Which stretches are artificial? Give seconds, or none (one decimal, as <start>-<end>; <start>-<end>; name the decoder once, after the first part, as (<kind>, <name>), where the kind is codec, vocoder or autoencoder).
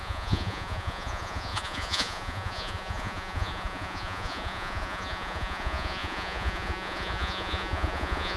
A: 0.0-8.4 (vocoder, Vocos)